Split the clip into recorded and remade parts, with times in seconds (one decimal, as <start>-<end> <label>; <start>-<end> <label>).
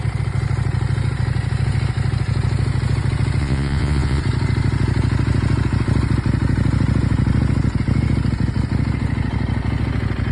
0.0-3.4 recorded; 3.4-4.2 remade; 4.2-10.3 recorded